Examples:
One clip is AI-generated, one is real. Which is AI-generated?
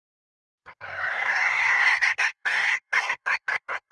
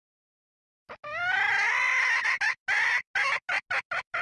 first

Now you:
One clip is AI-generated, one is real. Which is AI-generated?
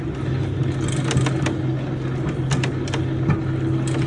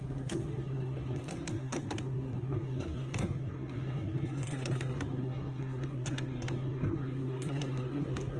second